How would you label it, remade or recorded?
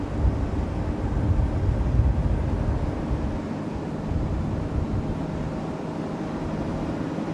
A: recorded